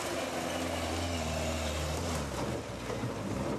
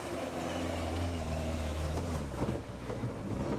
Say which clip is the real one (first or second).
first